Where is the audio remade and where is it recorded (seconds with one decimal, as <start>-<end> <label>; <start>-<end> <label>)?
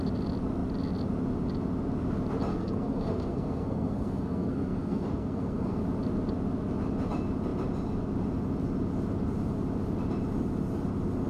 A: 0.0-2.5 recorded; 2.5-5.8 remade; 5.8-11.3 recorded